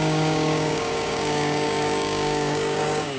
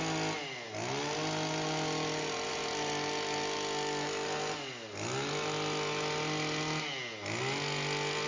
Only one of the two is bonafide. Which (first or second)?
second